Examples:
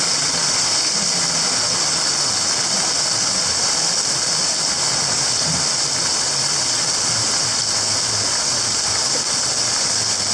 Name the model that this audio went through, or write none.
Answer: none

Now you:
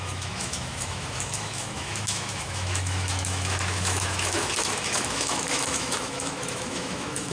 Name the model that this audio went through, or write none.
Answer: autoencoder, DAC-VAE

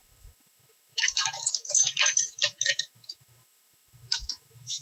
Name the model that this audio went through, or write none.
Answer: autoencoder, DAC-VAE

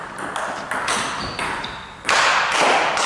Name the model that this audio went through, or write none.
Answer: none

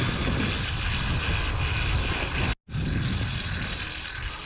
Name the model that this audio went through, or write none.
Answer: none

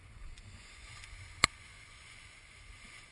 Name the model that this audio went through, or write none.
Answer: vocoder, Vocos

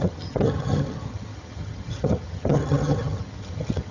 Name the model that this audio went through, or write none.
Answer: vocoder, HiFi-GAN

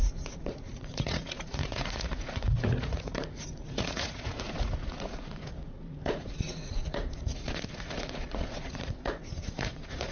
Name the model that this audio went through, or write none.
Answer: vocoder, Vocos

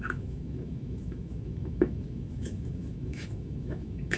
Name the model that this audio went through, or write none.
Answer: autoencoder, DAC-VAE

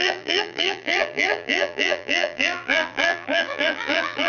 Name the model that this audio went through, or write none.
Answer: vocoder, BigVGAN v2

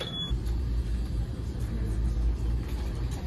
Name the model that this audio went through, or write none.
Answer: none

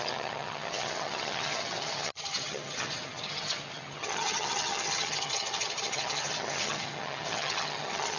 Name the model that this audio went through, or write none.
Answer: vocoder, HiFi-GAN